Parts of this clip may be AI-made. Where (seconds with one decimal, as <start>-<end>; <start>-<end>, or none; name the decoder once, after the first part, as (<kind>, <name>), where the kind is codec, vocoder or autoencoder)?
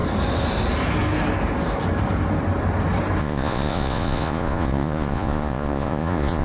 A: 3.2-6.4 (vocoder, Vocos)